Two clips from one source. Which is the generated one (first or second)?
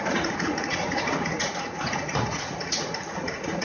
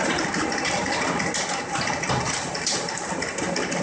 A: first